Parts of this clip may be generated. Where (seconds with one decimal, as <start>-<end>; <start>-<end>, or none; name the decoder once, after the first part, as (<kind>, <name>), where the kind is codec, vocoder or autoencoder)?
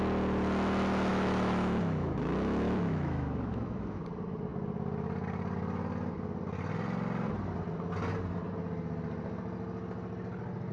1.1-4.0 (autoencoder, DAC-VAE)